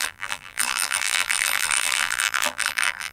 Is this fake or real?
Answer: fake